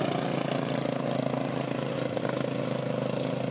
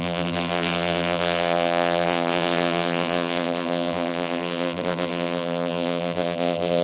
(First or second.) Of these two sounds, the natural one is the first